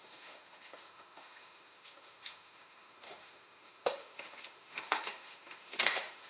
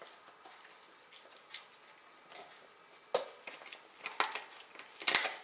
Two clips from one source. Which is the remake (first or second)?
first